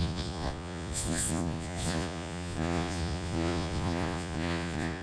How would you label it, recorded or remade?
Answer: remade